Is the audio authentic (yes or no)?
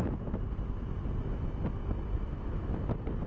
yes